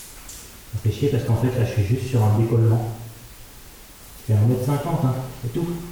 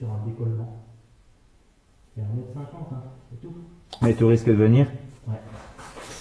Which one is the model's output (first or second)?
second